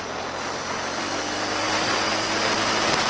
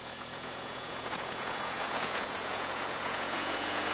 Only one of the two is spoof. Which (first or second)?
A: second